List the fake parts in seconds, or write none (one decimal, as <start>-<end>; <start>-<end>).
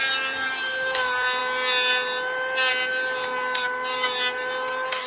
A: none